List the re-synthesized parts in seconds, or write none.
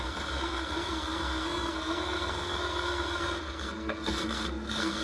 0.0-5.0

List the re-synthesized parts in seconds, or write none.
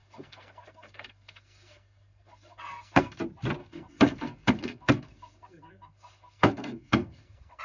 0.0-3.2; 3.6-7.6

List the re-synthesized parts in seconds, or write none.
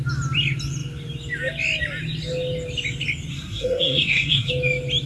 3.3-4.5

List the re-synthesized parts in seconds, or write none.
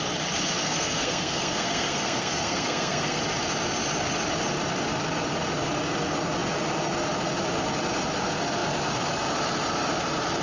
0.6-3.2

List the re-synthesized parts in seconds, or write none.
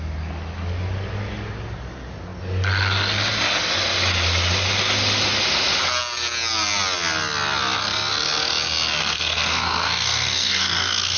9.0-11.2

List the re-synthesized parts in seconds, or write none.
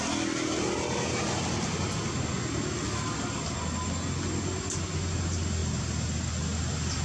none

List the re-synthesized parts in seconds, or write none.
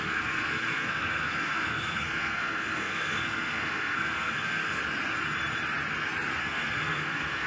0.0-4.8; 6.4-7.5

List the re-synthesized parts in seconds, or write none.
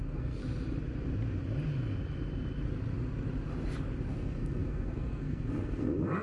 0.0-0.4; 4.1-6.2